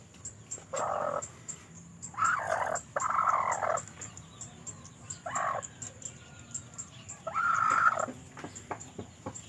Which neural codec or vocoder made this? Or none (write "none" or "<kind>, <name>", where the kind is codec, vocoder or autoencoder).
none